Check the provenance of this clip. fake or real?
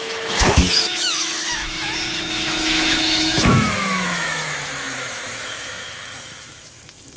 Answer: fake